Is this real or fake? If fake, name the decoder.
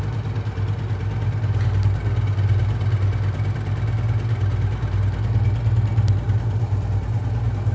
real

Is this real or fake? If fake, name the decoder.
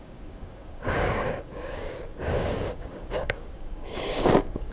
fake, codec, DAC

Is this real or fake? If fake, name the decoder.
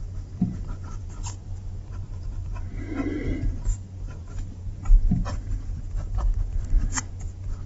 fake, vocoder, BigVGAN v2